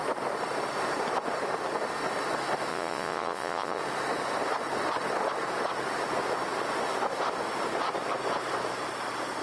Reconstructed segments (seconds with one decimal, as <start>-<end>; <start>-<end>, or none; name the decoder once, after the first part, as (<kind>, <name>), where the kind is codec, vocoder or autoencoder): 2.7-3.8 (vocoder, Vocos)